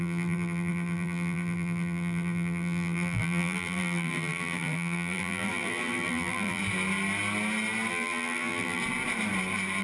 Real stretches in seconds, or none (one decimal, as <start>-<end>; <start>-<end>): 6.6-7.9; 8.8-9.8